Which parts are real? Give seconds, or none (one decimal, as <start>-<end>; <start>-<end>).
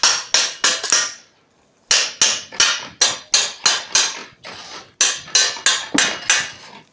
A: 0.0-6.9